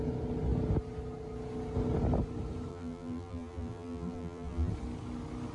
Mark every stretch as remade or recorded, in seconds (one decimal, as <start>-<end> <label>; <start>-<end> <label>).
0.0-2.7 recorded; 2.7-4.7 remade; 4.7-5.5 recorded